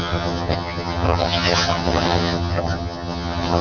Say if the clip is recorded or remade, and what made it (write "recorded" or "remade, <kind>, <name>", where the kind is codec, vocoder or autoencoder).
remade, vocoder, HiFi-GAN